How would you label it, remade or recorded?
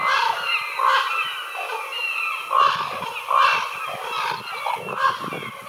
recorded